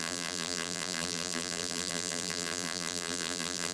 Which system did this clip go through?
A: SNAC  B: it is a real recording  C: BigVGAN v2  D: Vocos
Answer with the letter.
C